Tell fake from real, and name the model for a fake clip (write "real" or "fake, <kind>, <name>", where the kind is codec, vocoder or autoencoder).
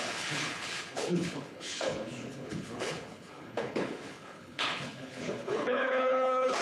fake, codec, HILCodec